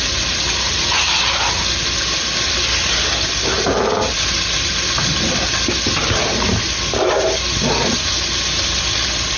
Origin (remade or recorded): recorded